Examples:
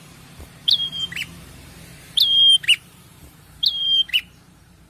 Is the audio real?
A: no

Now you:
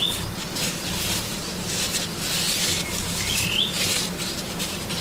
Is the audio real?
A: yes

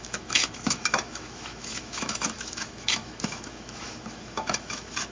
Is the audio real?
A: no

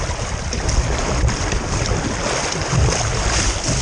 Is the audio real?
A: yes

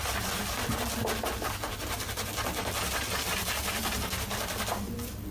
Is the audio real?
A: yes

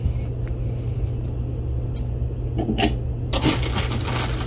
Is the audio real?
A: yes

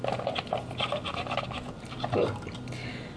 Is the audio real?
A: yes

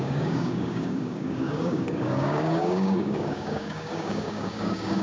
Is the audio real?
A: no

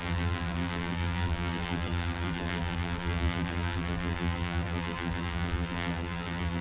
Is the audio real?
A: no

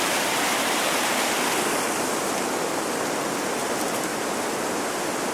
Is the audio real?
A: yes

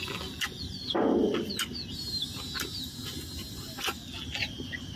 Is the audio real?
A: yes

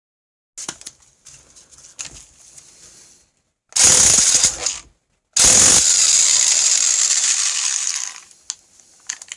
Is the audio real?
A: yes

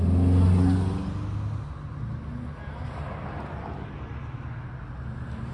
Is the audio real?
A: yes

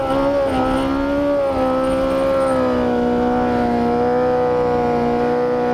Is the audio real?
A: yes